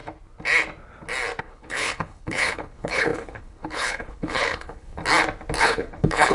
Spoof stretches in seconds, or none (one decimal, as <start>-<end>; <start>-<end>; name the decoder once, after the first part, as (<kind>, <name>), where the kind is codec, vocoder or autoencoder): 1.4-5.0 (codec, HILCodec); 5.6-6.3